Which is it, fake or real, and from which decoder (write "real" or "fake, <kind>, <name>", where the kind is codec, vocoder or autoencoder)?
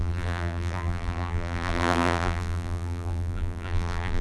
fake, vocoder, BigVGAN v2